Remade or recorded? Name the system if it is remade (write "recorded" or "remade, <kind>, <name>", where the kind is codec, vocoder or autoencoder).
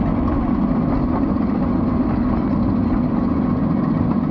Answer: recorded